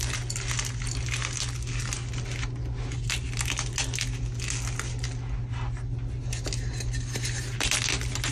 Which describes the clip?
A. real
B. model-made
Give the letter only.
A